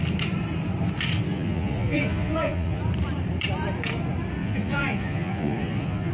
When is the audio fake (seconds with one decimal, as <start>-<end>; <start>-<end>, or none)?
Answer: 1.3-2.8; 4.4-6.1

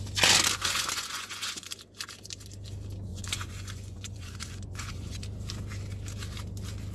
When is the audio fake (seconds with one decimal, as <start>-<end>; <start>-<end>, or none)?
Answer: 0.6-1.7; 3.1-5.2

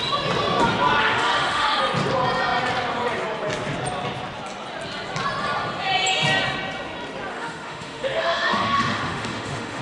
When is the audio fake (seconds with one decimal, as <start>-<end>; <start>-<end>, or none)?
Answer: 1.0-1.8; 7.3-9.8

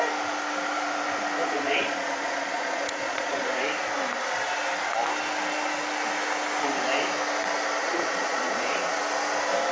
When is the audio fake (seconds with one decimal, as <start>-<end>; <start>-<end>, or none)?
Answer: 1.4-3.5; 7.8-8.9

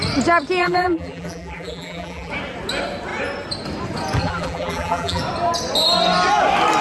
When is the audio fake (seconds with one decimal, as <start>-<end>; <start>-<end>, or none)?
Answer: 0.6-2.3; 4.2-5.2

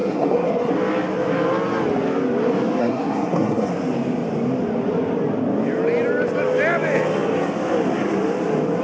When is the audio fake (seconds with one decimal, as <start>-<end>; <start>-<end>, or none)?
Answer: 0.0-0.7; 2.8-3.7

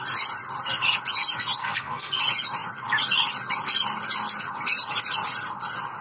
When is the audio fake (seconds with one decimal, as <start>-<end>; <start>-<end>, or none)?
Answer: 1.6-2.2

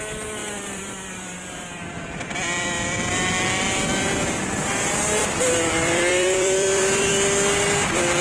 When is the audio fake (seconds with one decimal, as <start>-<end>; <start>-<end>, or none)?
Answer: 0.4-4.5; 5.2-7.1